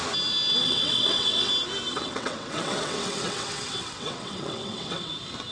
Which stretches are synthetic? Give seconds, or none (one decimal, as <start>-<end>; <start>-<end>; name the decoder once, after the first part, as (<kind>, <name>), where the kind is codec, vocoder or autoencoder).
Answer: 0.6-1.5 (vocoder, WaveNeXt); 1.9-5.1